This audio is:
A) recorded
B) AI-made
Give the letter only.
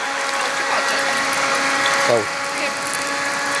A